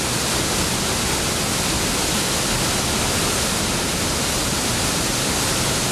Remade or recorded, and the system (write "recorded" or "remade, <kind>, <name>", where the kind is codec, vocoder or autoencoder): recorded